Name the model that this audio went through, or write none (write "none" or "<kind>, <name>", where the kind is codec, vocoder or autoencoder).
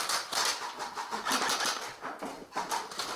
none